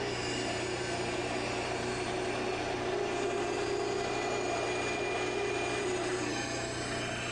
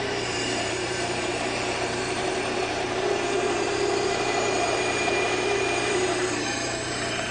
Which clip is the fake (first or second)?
second